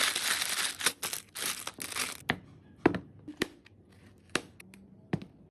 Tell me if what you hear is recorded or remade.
recorded